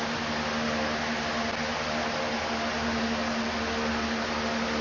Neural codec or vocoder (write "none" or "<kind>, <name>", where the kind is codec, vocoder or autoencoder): none